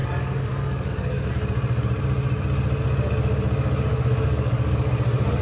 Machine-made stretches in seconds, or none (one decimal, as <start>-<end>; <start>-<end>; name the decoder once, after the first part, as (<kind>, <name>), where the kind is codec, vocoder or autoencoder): 0.0-1.3 (codec, DAC); 3.9-4.9